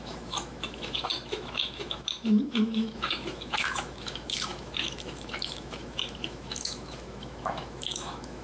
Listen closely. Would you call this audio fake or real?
fake